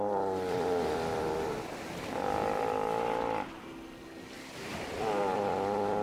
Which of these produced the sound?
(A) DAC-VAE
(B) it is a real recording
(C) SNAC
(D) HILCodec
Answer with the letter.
B